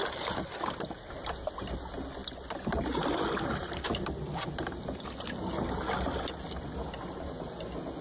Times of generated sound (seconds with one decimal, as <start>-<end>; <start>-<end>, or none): none